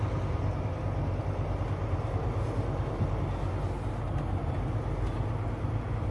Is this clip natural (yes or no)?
yes